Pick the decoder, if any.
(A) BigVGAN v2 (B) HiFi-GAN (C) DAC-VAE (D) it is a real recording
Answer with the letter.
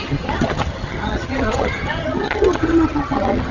B